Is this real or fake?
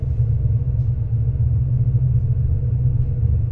real